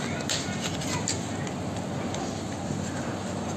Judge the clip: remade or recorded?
recorded